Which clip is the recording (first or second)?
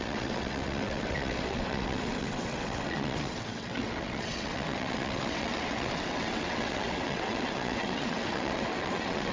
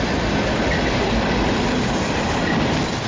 second